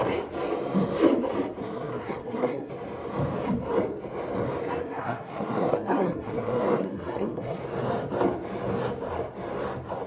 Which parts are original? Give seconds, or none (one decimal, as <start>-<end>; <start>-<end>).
0.0-1.6; 2.7-4.6; 7.6-10.1